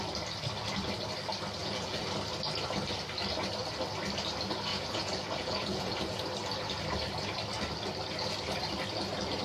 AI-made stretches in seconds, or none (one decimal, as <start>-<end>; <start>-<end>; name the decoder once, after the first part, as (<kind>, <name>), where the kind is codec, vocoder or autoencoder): 1.6-2.1 (vocoder, Vocos); 4.7-6.2